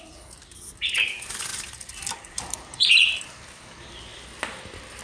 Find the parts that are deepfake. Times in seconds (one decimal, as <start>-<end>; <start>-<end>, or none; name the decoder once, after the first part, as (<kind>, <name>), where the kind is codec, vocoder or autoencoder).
1.5-3.2 (vocoder, BigVGAN v2)

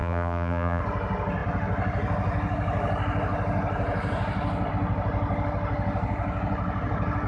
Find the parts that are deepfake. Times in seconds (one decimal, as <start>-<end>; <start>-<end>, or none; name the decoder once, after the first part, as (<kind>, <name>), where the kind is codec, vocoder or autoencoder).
0.0-0.8 (vocoder, BigVGAN v2)